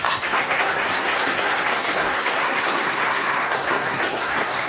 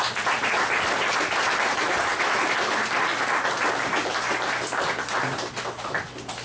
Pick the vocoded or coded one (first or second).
first